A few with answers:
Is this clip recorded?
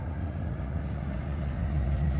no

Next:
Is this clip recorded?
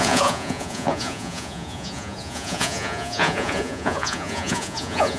no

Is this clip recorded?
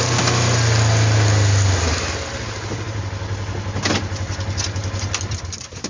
yes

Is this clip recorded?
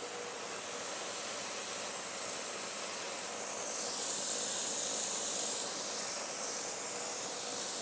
yes